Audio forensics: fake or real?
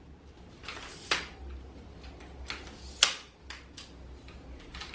real